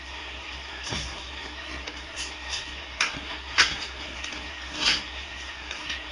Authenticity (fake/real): fake